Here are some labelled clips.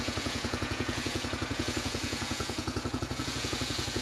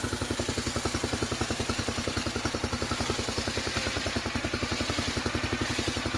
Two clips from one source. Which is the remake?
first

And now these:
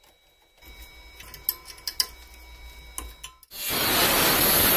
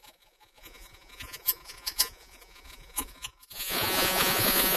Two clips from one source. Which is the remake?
second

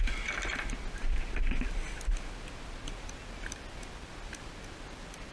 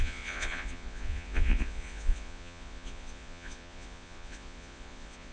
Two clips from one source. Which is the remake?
second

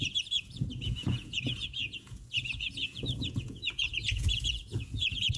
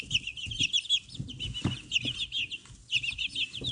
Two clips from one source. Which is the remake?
first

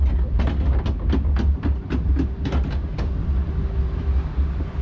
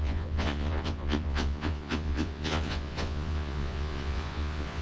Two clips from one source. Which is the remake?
second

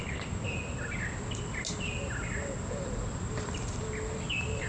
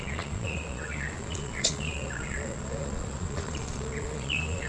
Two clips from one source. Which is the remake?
second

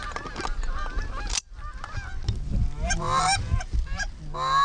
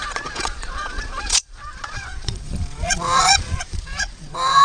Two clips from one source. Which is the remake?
second